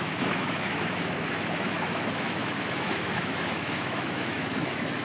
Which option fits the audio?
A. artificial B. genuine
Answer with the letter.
A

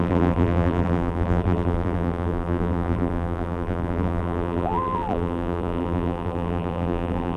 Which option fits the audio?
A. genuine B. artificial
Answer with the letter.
B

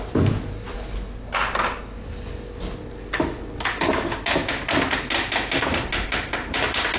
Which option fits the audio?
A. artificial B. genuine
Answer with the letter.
B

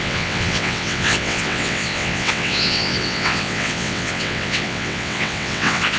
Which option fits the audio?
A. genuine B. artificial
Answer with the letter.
B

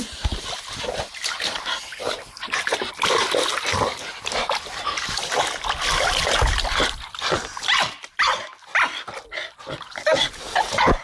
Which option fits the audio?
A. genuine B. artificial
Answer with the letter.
A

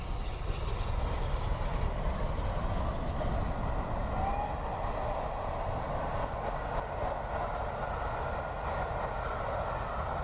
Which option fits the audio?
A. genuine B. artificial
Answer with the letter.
A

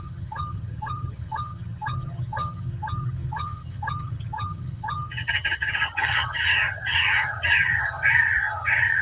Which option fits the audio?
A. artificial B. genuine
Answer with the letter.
A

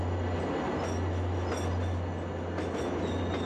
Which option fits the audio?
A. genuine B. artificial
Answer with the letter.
A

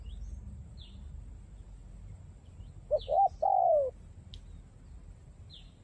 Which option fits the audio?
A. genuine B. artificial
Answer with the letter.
A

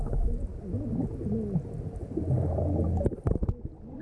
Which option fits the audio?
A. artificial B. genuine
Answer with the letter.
B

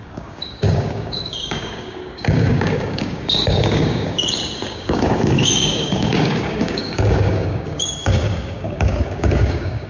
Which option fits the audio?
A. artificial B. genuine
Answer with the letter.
A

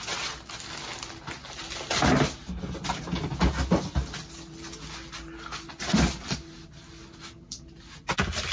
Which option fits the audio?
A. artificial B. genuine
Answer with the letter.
B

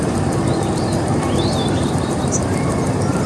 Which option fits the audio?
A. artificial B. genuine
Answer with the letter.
A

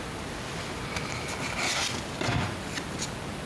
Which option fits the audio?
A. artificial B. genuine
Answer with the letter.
B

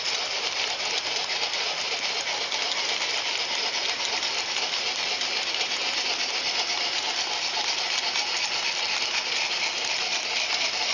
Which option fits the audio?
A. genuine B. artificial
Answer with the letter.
A